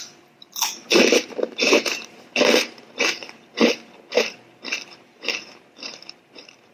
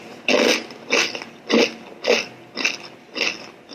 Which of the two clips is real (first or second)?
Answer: second